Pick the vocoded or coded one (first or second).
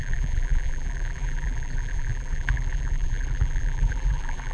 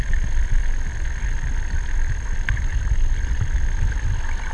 first